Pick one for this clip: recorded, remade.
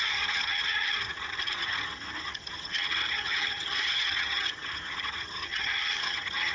remade